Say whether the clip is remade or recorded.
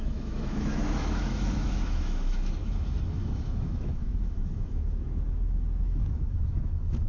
remade